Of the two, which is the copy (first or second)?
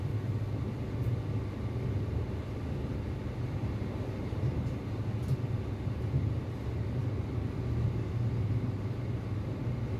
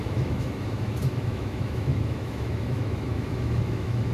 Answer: second